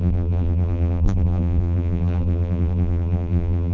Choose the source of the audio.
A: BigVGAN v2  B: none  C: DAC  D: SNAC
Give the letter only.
A